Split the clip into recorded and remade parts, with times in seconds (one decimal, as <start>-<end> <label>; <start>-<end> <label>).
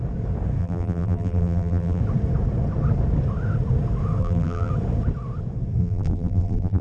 0.0-0.6 recorded; 0.6-2.0 remade; 2.0-4.2 recorded; 4.2-4.7 remade; 4.7-5.8 recorded; 5.8-6.8 remade